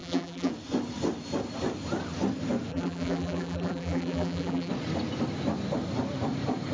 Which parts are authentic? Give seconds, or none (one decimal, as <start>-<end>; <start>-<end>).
0.5-2.7; 4.7-6.7